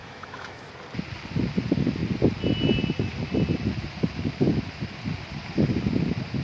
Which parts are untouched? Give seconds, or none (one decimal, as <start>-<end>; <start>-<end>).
0.7-6.4